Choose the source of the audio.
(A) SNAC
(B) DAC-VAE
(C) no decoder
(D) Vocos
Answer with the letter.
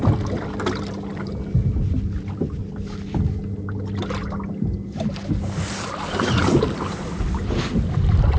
C